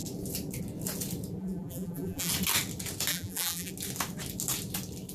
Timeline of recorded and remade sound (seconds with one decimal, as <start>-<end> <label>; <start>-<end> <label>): 0.0-1.4 recorded; 1.4-2.3 remade; 2.3-3.1 recorded; 3.1-3.7 remade; 3.7-5.1 recorded